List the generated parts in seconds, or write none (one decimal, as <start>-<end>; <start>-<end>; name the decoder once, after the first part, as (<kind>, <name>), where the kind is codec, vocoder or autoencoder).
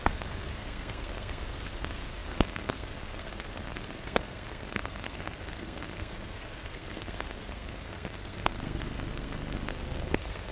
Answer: 0.0-10.5 (codec, SNAC)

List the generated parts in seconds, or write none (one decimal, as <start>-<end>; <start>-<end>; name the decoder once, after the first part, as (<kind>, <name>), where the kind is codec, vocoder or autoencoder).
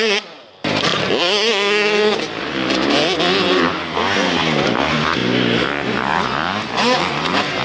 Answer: none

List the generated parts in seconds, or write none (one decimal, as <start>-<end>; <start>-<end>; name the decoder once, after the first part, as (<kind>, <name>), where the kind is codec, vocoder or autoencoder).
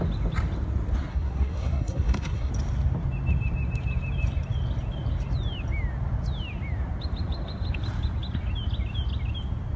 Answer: 1.1-2.5 (codec, SNAC)